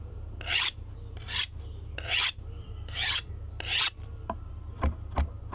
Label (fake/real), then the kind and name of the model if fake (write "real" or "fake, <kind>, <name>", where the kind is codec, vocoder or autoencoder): fake, vocoder, BigVGAN v2